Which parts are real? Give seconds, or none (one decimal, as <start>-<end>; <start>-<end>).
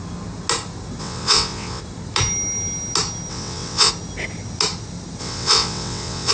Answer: 0.0-1.0; 1.8-3.3; 3.9-5.2